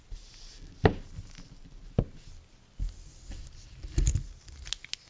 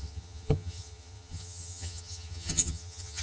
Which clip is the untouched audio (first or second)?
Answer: first